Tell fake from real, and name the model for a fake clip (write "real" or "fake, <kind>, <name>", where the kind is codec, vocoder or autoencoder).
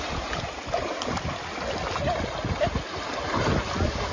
real